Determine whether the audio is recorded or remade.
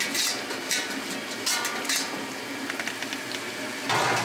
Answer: recorded